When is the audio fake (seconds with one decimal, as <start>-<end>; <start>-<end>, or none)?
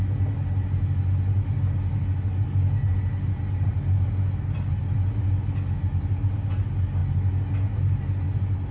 none